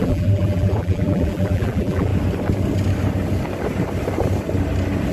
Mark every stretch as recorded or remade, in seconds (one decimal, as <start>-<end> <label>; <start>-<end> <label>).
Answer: 0.0-2.1 remade; 2.1-5.1 recorded